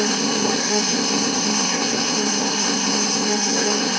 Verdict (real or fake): fake